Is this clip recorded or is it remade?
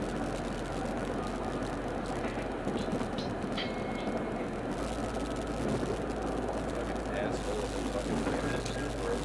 recorded